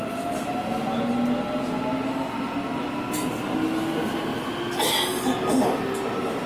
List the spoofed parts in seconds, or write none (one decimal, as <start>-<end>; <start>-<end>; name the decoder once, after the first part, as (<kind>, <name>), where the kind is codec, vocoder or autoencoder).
none